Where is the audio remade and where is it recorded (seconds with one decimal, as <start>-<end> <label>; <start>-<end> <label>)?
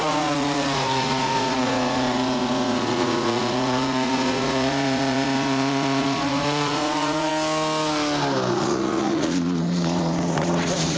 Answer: 0.0-7.3 remade; 7.3-8.5 recorded; 8.5-11.0 remade